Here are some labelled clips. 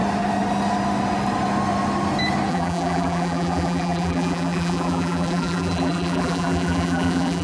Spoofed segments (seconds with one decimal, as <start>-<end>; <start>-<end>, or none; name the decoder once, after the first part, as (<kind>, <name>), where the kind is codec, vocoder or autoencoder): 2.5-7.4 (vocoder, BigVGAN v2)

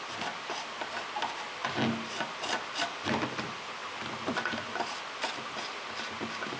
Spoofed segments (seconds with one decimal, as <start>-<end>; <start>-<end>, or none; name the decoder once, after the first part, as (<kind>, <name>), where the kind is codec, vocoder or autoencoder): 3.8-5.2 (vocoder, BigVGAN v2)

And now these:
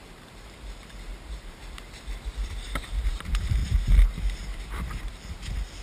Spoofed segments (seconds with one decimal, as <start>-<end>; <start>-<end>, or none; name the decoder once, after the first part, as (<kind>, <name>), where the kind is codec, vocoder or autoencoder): 0.0-1.6 (vocoder, BigVGAN v2); 2.4-5.1

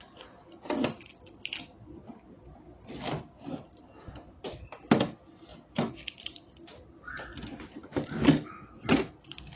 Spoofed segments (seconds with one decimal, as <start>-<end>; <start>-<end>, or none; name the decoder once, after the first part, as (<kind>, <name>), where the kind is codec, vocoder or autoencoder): 5.5-6.9 (vocoder, BigVGAN v2)